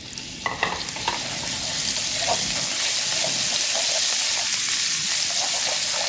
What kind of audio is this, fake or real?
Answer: real